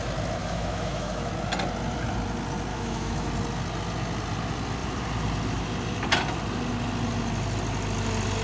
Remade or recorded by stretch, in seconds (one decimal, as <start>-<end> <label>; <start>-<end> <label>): 0.0-0.4 recorded; 0.4-1.3 remade; 1.3-2.7 recorded; 2.7-3.3 remade; 3.3-8.4 recorded